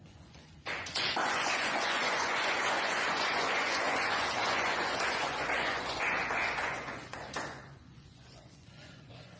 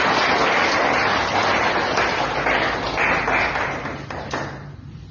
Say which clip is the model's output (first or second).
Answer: first